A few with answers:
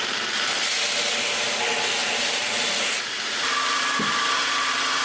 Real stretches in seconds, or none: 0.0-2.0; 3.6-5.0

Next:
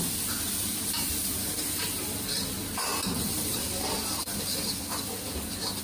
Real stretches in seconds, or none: 0.0-3.5; 4.8-5.8